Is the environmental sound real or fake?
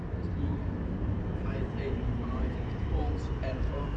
fake